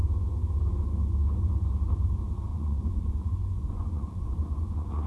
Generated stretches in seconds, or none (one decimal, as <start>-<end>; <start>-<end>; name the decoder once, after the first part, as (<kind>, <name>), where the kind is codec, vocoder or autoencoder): 2.5-5.1 (vocoder, Vocos)